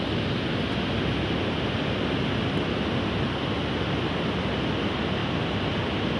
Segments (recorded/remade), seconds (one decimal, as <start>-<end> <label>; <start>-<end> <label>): 0.0-6.2 recorded